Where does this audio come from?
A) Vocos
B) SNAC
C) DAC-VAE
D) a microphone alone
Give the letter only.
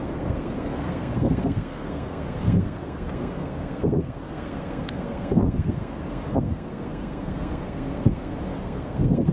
B